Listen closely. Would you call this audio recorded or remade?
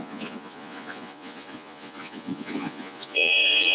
remade